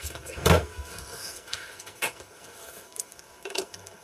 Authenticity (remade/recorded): remade